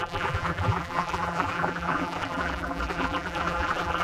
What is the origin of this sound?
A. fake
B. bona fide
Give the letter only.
A